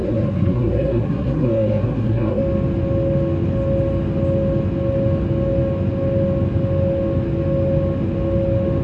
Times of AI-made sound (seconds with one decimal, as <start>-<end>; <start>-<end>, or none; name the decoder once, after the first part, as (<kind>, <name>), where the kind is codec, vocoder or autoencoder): 0.0-2.4 (codec, SNAC)